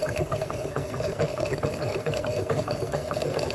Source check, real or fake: fake